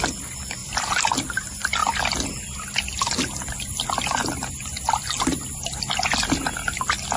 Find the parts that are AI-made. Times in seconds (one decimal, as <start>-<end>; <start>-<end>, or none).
none